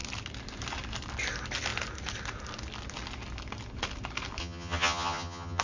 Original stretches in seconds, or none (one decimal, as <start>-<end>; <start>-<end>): 0.0-4.4